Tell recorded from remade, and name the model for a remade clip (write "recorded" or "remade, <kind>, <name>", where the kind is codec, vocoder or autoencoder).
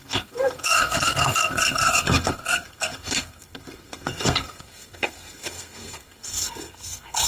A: remade, codec, SNAC